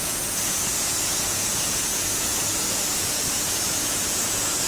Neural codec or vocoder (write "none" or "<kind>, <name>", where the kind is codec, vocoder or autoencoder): vocoder, Vocos